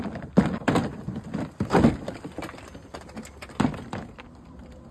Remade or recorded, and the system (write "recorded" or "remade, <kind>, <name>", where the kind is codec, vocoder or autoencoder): recorded